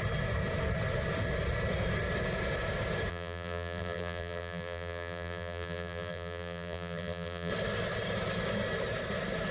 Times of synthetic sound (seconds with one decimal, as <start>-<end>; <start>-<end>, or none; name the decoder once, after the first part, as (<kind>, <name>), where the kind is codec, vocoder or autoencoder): 3.1-7.5 (vocoder, BigVGAN v2)